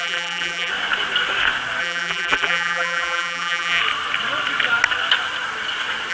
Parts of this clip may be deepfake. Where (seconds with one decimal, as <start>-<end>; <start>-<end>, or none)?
0.0-0.7; 1.8-3.8